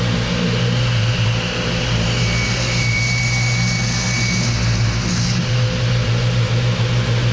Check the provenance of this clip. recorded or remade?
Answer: recorded